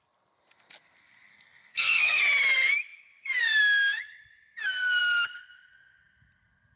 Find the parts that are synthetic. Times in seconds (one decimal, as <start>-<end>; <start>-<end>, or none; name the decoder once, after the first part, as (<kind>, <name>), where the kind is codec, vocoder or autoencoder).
1.3-2.2 (codec, SNAC)